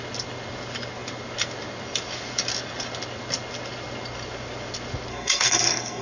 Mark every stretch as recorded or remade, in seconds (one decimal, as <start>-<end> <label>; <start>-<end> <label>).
0.0-5.1 recorded; 5.1-6.0 remade